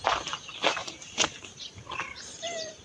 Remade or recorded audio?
remade